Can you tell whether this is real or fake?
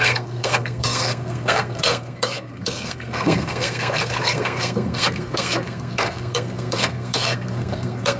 fake